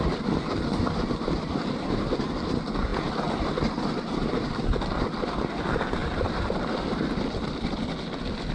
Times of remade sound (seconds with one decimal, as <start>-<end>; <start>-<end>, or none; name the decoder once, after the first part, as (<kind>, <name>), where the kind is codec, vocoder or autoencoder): 2.9-4.3 (vocoder, BigVGAN v2); 6.0-7.1